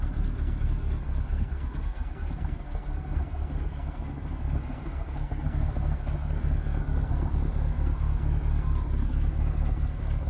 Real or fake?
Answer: fake